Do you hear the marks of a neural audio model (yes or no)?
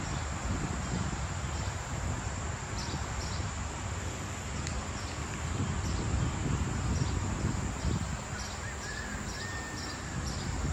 no